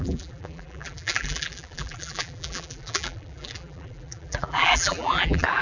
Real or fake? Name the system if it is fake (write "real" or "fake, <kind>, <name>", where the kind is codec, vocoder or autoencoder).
fake, vocoder, BigVGAN v2